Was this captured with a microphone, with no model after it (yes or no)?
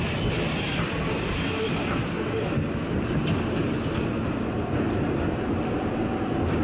yes